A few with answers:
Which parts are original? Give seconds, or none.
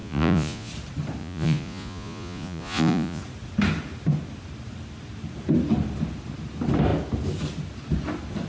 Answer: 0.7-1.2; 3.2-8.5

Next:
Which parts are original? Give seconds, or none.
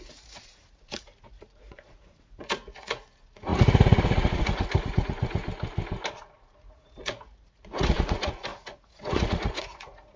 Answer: 5.4-6.2